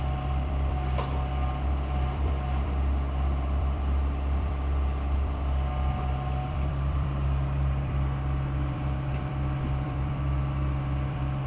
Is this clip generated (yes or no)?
yes